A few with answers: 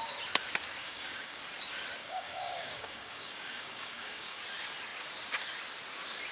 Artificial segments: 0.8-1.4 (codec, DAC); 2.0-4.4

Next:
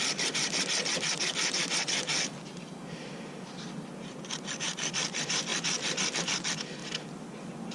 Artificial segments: 0.0-5.5 (vocoder, BigVGAN v2); 6.2-6.8

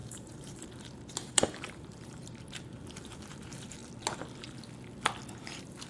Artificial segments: 0.0-3.8 (vocoder, BigVGAN v2); 5.3-5.9

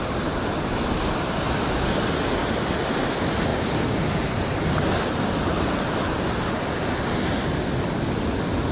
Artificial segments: none

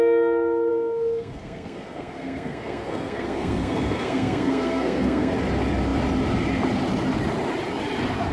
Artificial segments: 0.7-5.3 (codec, SNAC)

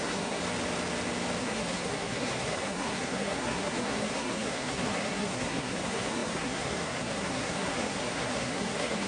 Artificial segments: 0.0-0.4 (codec, SNAC); 1.4-9.1

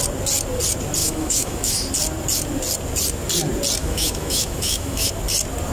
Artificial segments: 1.0-1.8 (autoencoder, DAC-VAE); 3.8-5.1